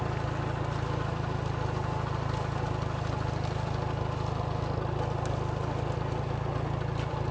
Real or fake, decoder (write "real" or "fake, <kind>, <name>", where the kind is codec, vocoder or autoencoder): real